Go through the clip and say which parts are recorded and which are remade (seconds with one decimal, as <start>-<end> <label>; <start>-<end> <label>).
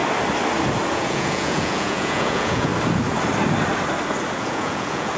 0.0-0.9 recorded; 0.9-2.7 remade; 2.7-4.4 recorded; 4.4-5.2 remade